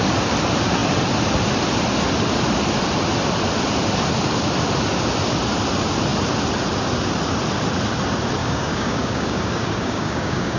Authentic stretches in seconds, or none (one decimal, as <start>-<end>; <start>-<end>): 0.0-8.4